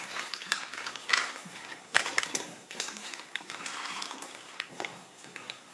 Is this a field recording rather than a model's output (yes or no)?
no